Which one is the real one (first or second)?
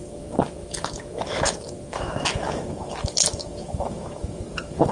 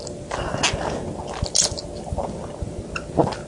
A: second